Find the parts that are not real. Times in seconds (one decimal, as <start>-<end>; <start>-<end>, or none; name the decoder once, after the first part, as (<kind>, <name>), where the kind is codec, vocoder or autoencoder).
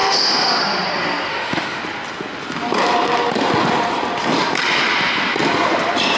0.0-0.6 (autoencoder, DAC-VAE); 1.3-1.8